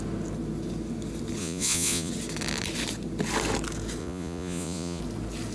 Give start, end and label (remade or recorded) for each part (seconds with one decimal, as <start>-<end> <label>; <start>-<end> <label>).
0.0-1.4 recorded; 1.4-2.1 remade; 2.1-4.0 recorded; 4.0-5.0 remade; 5.0-5.5 recorded